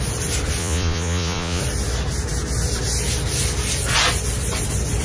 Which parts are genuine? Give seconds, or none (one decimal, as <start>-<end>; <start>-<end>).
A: 0.0-0.6; 1.6-5.0